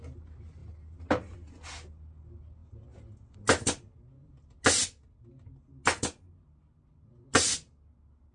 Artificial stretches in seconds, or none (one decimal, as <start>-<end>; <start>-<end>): none